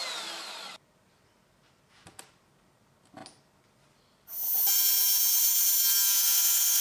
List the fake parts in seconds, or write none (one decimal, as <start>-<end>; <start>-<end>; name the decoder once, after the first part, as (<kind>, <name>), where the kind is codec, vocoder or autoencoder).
none